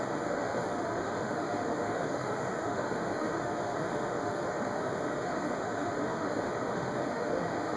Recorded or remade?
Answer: remade